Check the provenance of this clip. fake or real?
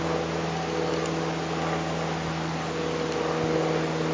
real